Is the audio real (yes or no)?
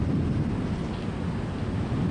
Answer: yes